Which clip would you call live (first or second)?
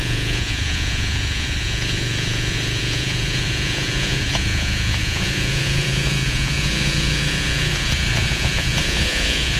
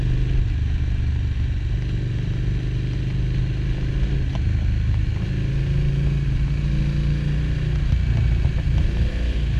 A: second